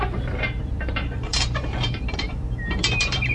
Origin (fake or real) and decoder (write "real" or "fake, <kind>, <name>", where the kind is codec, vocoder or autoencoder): fake, vocoder, BigVGAN v2